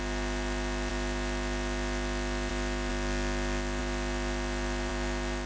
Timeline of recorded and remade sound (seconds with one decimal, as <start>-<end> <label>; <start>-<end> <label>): 0.0-5.5 recorded